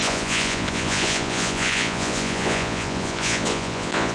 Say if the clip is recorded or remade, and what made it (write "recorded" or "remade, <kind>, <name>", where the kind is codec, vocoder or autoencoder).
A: remade, vocoder, Vocos